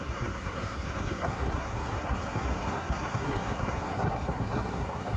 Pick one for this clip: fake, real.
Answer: fake